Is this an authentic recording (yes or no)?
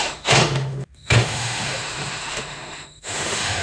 no